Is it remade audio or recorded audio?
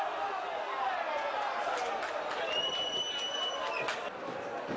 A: recorded